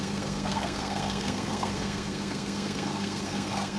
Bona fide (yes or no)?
no